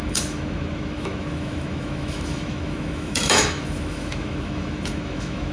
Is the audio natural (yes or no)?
no